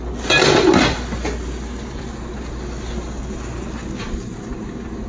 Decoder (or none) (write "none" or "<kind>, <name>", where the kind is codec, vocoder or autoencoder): none